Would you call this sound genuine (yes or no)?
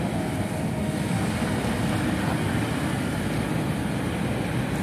yes